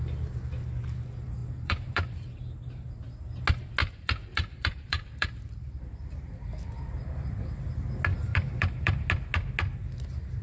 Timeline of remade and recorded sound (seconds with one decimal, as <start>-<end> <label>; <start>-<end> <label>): 0.0-1.4 recorded; 1.4-2.4 remade; 2.4-3.8 recorded; 3.8-6.3 remade; 6.3-8.1 recorded; 8.1-9.1 remade; 9.1-10.4 recorded